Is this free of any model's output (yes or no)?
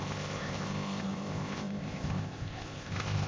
no